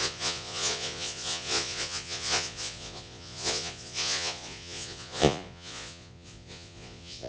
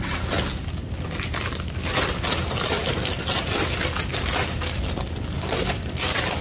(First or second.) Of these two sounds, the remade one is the first